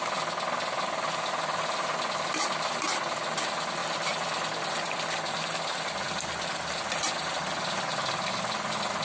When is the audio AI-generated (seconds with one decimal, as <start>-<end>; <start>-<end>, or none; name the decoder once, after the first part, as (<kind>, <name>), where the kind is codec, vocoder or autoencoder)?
none